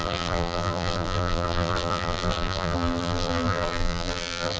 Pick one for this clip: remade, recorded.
remade